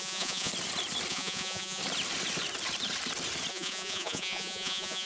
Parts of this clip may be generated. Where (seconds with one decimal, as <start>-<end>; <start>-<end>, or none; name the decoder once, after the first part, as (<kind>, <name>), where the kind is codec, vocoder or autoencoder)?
0.0-0.5 (vocoder, Vocos); 1.1-1.8; 3.5-5.1